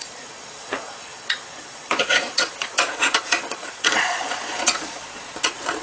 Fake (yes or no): yes